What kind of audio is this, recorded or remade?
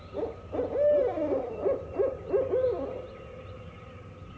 recorded